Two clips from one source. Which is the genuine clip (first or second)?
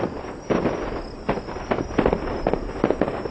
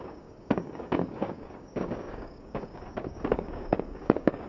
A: first